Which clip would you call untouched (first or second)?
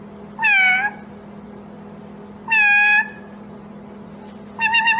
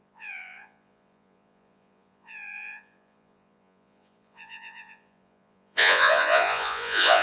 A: first